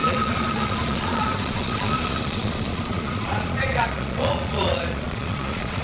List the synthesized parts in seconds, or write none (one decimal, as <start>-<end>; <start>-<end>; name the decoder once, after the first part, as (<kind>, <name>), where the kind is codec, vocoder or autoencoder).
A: 0.0-5.8 (vocoder, Vocos)